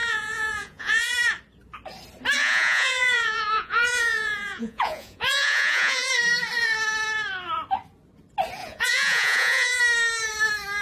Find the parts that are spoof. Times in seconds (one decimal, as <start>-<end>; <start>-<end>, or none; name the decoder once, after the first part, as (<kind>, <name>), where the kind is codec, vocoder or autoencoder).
0.0-1.1 (vocoder, Vocos); 2.4-6.1; 8.6-9.8